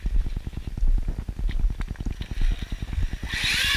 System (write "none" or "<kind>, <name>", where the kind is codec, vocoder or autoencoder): none